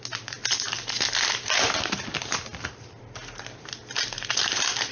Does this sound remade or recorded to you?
recorded